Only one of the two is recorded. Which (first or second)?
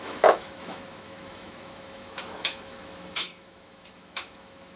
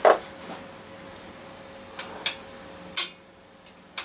second